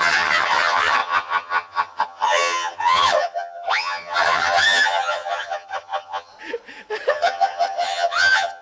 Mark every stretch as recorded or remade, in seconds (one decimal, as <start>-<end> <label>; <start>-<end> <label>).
0.0-6.3 remade; 6.3-7.1 recorded; 7.1-8.6 remade